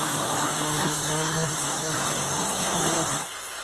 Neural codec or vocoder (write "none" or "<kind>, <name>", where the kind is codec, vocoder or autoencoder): codec, SNAC